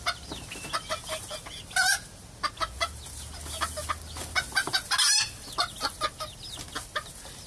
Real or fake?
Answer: real